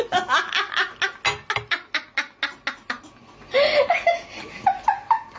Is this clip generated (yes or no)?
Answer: no